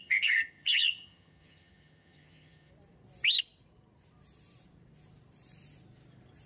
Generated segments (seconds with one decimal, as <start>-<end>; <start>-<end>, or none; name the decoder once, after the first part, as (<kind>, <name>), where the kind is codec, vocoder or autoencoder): 0.0-2.7 (vocoder, HiFi-GAN)